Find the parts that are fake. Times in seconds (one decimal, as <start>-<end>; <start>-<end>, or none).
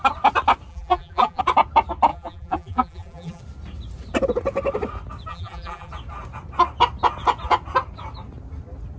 0.7-1.4; 2.1-3.4; 5.3-5.9